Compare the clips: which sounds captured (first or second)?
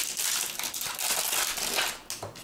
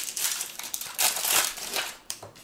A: first